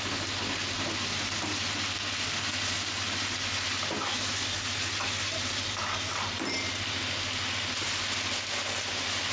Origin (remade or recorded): recorded